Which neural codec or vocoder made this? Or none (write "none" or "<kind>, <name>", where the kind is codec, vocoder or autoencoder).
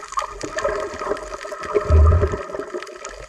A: none